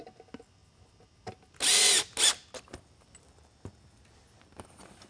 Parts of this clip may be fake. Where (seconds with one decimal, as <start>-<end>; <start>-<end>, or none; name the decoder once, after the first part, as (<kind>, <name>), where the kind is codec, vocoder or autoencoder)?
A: none